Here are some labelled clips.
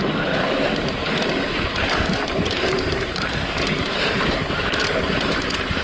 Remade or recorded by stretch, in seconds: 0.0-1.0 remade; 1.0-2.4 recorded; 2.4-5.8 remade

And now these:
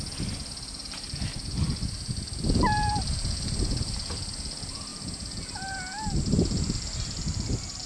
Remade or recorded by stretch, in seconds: 0.0-7.9 recorded

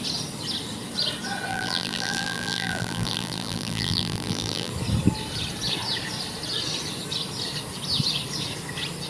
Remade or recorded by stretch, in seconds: 0.0-1.5 recorded; 1.5-4.7 remade; 4.7-9.1 recorded

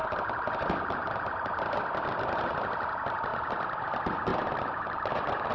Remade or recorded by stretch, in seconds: 0.0-1.8 remade; 1.8-4.3 recorded; 4.3-5.5 remade

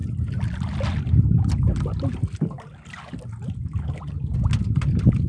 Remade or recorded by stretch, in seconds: 0.0-5.3 recorded